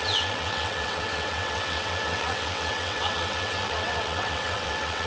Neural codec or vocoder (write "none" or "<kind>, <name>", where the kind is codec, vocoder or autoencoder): vocoder, WaveNeXt